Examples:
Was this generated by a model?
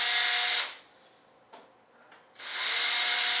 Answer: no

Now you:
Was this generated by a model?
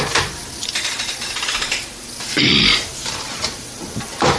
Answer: no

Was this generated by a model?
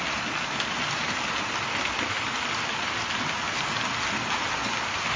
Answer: no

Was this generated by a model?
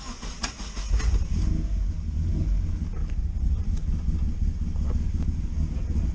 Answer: no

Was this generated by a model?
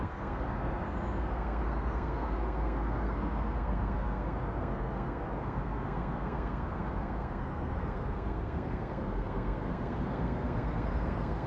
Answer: yes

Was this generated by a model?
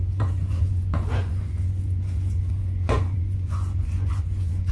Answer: yes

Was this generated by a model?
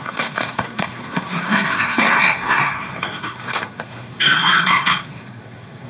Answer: yes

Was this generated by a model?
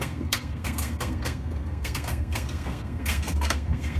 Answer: yes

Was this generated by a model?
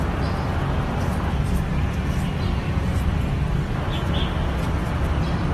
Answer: no